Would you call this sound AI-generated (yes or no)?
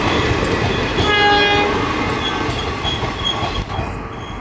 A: no